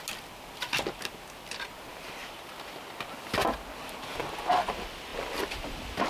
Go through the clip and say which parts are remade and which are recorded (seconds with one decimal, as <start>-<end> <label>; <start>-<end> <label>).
0.0-5.1 recorded; 5.1-6.1 remade